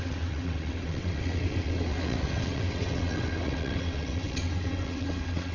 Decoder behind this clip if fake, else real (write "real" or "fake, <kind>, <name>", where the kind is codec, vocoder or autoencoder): fake, vocoder, WaveNeXt